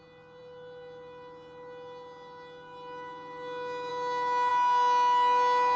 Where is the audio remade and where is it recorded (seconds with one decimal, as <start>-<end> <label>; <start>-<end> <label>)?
0.0-5.8 recorded